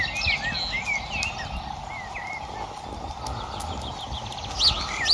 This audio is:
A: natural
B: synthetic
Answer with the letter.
A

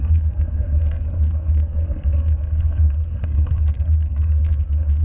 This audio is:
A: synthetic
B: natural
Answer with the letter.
A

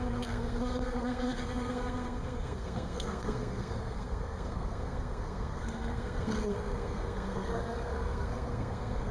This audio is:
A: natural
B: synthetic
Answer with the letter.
B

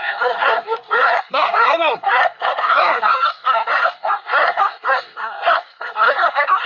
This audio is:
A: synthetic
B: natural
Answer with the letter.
A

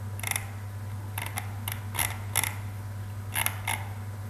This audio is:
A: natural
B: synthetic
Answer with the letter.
A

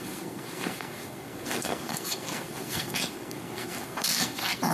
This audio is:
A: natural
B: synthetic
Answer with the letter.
B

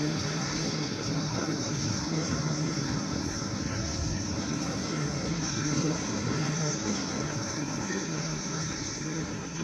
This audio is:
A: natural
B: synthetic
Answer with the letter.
B